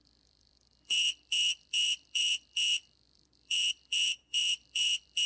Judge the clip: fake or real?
fake